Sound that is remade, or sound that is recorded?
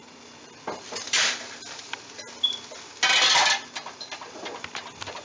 recorded